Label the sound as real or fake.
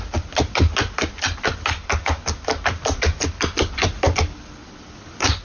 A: real